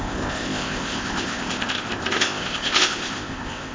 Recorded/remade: remade